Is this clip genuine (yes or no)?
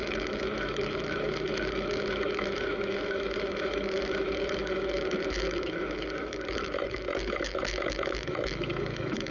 no